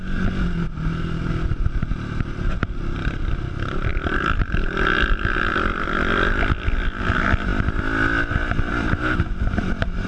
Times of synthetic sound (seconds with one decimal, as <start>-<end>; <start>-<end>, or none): none